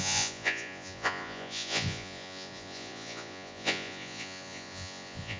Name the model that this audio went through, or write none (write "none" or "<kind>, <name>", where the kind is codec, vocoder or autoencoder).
vocoder, Vocos